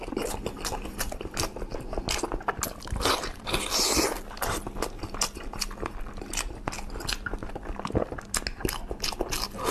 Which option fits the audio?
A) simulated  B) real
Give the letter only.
B